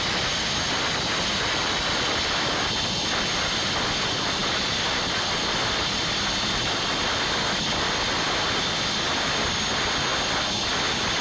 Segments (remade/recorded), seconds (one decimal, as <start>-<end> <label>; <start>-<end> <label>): 0.0-11.2 recorded